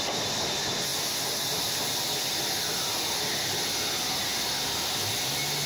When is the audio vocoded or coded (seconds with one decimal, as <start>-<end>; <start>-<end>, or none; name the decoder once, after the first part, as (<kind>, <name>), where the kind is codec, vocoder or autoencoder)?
0.9-3.1 (vocoder, BigVGAN v2)